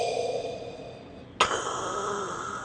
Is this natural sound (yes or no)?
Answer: yes